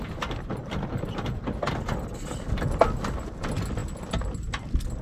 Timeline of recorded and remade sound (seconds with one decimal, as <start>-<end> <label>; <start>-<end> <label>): 0.0-5.0 recorded